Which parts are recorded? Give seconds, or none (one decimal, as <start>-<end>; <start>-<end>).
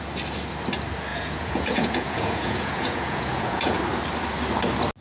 0.0-1.1; 3.8-5.0